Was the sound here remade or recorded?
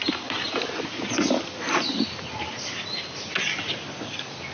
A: recorded